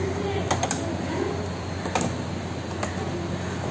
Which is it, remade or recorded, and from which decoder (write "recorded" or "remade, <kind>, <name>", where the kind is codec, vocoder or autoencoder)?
recorded